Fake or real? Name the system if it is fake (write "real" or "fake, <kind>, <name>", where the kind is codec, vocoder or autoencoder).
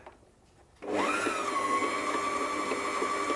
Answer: real